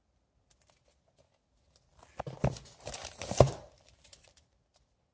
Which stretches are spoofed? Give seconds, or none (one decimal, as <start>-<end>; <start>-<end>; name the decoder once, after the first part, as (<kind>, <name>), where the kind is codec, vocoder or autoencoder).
none